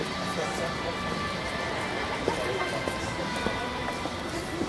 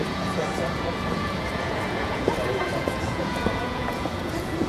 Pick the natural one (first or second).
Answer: first